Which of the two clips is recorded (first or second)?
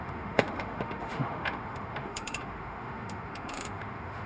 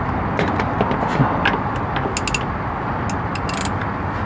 second